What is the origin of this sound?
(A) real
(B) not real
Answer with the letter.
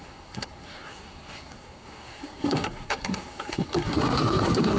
B